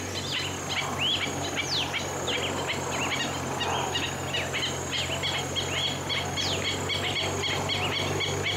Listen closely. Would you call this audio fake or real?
real